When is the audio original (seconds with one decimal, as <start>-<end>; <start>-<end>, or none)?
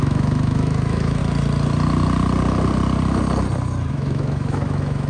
1.2-3.9